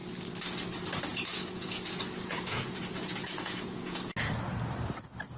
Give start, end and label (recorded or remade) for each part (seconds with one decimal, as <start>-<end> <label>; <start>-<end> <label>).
0.0-1.1 recorded; 1.1-4.3 remade; 4.3-5.4 recorded